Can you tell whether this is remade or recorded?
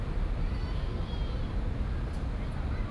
recorded